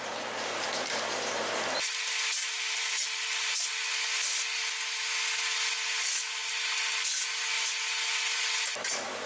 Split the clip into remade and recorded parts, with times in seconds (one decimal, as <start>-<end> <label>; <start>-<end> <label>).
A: 0.0-2.4 recorded; 2.4-3.7 remade; 3.7-9.3 recorded